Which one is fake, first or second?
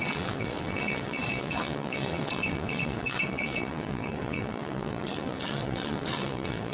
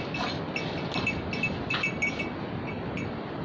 first